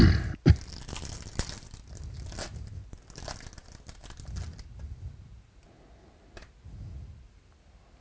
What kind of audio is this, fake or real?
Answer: real